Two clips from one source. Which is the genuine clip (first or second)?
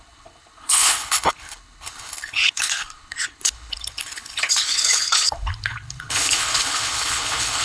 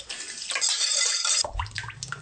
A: second